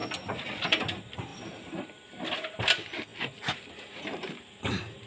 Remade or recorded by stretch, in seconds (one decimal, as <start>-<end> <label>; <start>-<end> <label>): 0.0-5.1 recorded

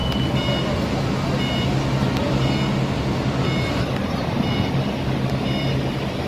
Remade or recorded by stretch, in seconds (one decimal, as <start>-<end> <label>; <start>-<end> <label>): 0.0-6.3 recorded